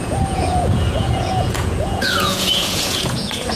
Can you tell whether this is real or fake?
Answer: fake